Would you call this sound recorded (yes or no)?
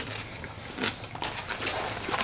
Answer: yes